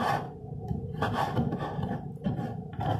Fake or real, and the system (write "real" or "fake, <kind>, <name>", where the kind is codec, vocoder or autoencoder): real